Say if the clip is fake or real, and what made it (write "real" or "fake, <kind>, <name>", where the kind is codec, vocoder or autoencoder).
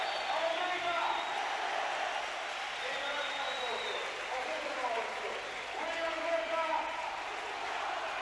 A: fake, vocoder, BigVGAN v2